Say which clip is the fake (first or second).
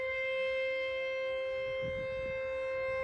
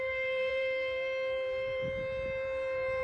second